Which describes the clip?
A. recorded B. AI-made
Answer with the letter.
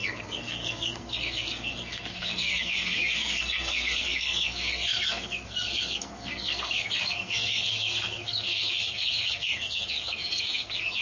B